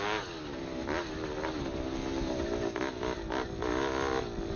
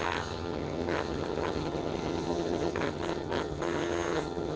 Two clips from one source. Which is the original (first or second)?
first